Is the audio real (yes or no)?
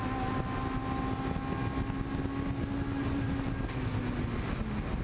yes